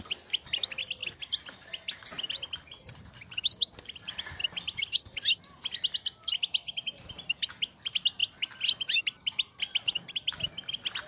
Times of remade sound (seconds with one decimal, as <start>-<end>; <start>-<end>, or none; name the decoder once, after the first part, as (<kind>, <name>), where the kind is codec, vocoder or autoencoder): none